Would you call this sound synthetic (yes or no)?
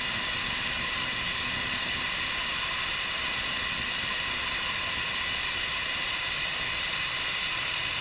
no